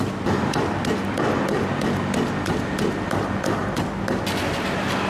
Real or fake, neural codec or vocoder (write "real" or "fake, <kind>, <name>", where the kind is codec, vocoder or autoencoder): real